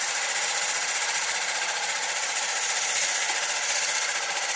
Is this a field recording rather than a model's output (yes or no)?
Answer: yes